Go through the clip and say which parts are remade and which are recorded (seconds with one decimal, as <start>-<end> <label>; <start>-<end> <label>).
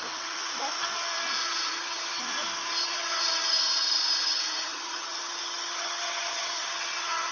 0.0-1.4 recorded; 1.4-2.2 remade; 2.2-2.8 recorded; 2.8-7.3 remade